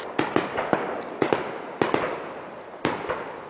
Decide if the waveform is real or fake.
real